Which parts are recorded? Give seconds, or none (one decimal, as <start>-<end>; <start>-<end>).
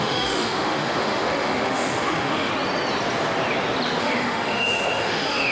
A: 2.5-4.0